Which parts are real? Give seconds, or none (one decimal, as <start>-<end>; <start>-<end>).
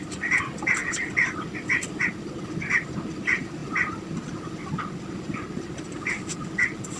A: 0.0-7.0